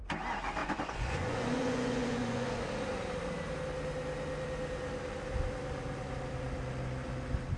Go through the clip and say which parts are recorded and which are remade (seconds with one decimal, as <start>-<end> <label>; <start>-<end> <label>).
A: 0.0-0.6 recorded; 0.6-2.5 remade; 2.5-7.6 recorded